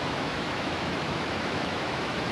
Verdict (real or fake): fake